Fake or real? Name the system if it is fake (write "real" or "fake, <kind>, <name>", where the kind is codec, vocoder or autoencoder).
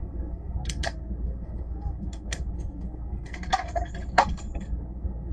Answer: fake, codec, SNAC